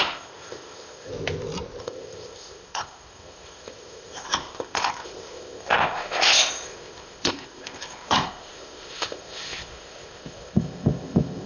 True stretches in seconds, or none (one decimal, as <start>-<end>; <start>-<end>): 1.1-1.8